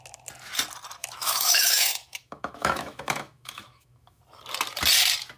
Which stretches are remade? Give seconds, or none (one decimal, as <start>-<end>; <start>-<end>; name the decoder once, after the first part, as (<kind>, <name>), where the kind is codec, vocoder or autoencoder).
1.0-4.2 (autoencoder, DAC-VAE)